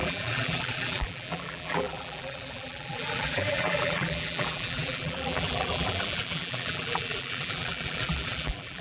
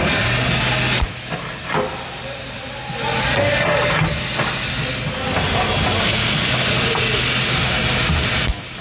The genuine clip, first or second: second